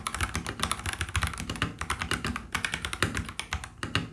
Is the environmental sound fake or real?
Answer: real